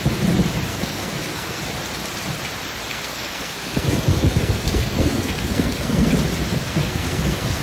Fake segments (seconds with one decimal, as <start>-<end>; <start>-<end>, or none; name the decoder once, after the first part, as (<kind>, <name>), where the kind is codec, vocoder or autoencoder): 0.7-1.6 (codec, SNAC); 2.9-6.1; 6.5-7.6